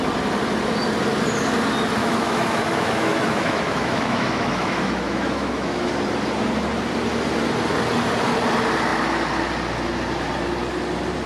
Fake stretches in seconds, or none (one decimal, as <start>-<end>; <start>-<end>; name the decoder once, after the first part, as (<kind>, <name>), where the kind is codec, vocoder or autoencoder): 2.0-5.9 (autoencoder, DAC-VAE)